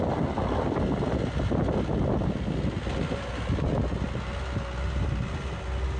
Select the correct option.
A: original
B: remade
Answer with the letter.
A